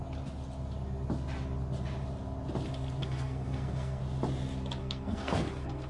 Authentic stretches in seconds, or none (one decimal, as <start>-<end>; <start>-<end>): 0.0-3.0; 4.0-4.8